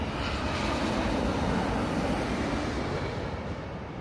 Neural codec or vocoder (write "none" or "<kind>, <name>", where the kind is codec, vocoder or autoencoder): none